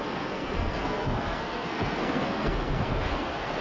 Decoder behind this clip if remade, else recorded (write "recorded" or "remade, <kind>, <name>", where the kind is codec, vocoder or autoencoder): remade, codec, SNAC